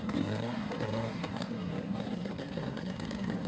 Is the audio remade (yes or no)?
yes